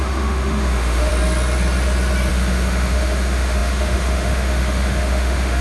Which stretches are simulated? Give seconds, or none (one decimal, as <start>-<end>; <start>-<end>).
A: 0.0-1.1; 2.3-5.6